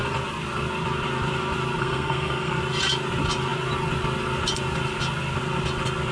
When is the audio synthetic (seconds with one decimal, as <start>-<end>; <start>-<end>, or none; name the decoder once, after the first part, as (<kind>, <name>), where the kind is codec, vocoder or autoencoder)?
1.8-2.6 (codec, SNAC)